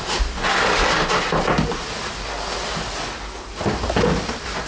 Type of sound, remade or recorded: recorded